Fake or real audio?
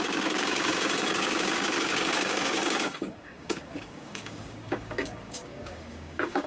fake